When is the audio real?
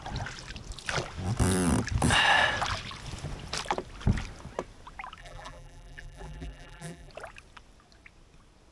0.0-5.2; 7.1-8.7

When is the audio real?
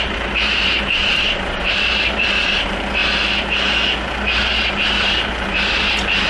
3.0-4.7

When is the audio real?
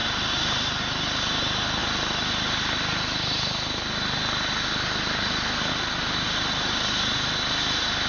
0.0-8.1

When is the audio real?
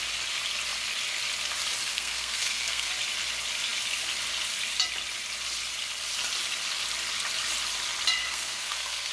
0.0-1.9; 2.9-8.2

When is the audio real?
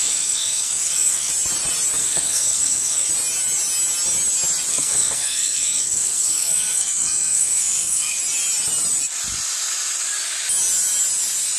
1.3-2.0; 3.1-4.7; 8.2-11.6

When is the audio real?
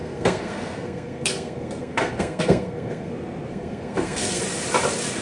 3.1-3.5; 4.4-5.2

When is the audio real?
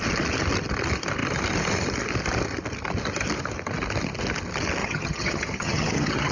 0.0-4.8